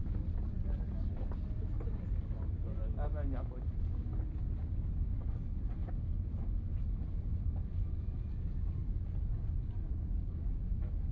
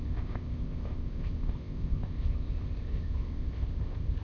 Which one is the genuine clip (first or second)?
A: first